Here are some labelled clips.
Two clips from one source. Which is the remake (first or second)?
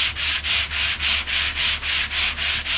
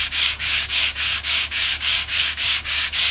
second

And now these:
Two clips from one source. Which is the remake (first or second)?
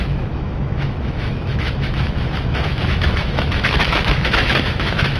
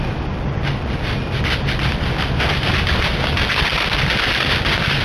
first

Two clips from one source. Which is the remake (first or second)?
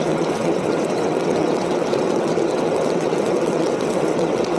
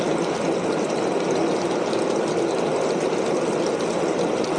first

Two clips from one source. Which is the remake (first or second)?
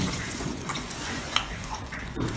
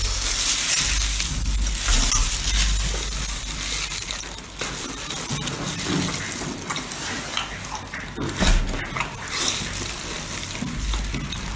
first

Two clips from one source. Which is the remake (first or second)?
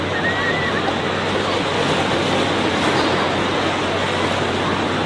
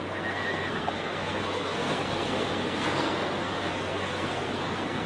second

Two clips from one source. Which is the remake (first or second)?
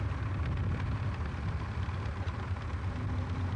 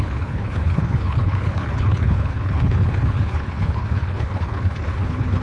second